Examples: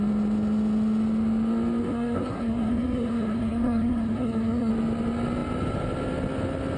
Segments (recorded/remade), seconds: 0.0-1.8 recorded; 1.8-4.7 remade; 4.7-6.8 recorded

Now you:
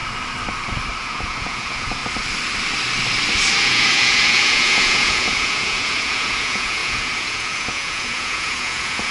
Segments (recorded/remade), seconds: 0.0-1.0 recorded; 1.0-2.0 remade; 2.0-3.6 recorded; 3.6-9.1 remade

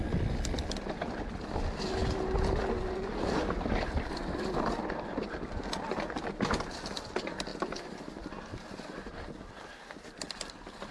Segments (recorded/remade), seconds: 0.0-10.9 recorded

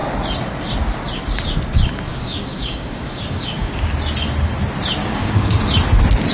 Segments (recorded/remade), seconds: 0.0-2.1 recorded; 2.1-3.9 remade; 3.9-5.0 recorded; 5.0-5.6 remade; 5.6-6.3 recorded

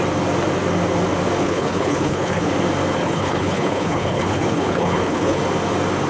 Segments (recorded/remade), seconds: 0.0-1.4 recorded; 1.4-2.5 remade; 2.5-3.0 recorded; 3.0-5.4 remade; 5.4-6.1 recorded

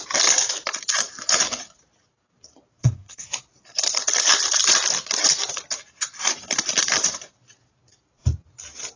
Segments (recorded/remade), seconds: 0.0-2.8 recorded; 2.8-3.3 remade; 3.3-9.0 recorded

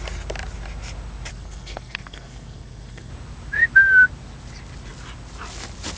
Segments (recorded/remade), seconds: 0.0-1.3 recorded; 1.3-3.1 remade; 3.1-6.0 recorded

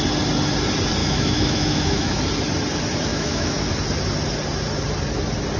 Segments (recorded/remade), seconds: 0.0-1.0 recorded; 1.0-2.2 remade; 2.2-3.1 recorded; 3.1-3.7 remade; 3.7-5.6 recorded